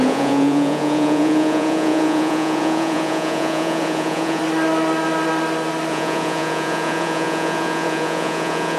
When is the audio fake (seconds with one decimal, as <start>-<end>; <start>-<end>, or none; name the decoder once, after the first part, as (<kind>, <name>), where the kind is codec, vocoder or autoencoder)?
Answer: 0.0-4.4 (vocoder, Vocos); 5.9-8.8